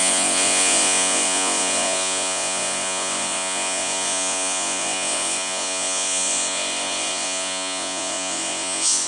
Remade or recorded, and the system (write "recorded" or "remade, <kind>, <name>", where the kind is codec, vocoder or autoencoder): remade, vocoder, Vocos